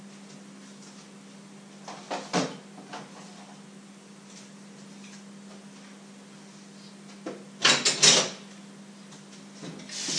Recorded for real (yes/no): yes